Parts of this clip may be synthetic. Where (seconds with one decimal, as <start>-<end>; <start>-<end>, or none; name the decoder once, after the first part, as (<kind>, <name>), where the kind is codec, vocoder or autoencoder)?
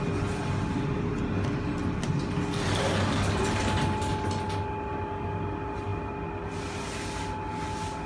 none